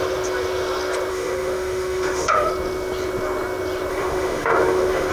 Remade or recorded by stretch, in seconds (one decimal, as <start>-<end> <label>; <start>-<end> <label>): 0.0-1.1 recorded; 1.1-2.5 remade; 2.5-3.9 recorded; 3.9-5.1 remade